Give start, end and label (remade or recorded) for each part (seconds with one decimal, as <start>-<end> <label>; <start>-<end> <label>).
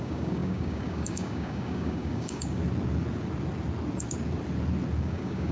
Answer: 0.0-2.6 remade; 2.6-5.0 recorded; 5.0-5.5 remade